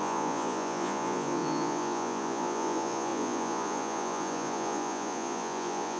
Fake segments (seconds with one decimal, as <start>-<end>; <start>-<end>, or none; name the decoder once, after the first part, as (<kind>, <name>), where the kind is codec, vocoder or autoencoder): 0.0-6.0 (vocoder, Vocos)